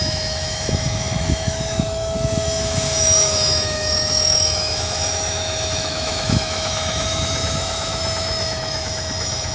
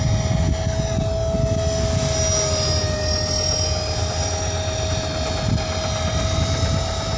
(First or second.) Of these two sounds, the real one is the second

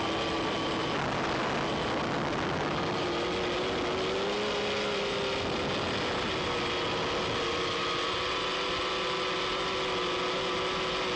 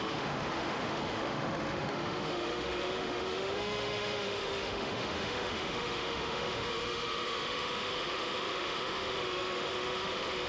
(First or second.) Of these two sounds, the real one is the first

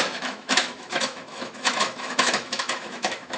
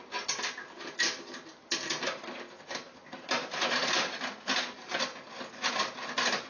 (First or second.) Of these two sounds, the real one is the second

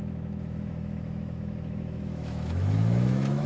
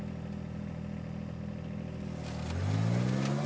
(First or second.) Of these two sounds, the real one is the second